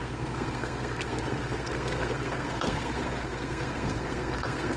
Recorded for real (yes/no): no